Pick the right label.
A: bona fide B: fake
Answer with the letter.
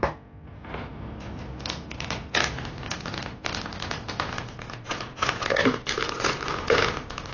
A